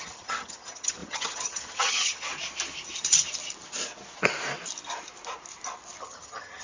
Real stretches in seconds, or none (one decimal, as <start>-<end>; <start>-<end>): 2.3-6.0